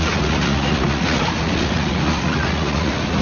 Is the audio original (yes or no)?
no